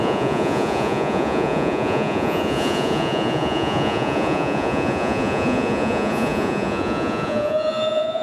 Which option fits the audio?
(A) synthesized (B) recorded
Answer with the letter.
A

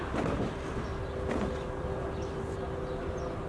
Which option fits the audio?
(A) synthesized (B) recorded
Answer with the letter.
B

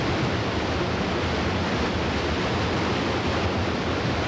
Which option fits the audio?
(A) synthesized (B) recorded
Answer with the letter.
B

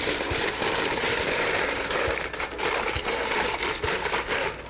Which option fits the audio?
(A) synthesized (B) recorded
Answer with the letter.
B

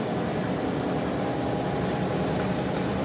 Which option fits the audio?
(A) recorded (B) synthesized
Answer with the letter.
A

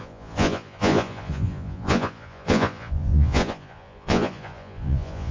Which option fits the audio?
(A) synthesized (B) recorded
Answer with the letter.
A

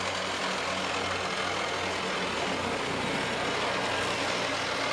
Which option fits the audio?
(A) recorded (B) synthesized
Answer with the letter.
A